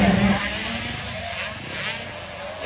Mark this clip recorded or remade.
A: recorded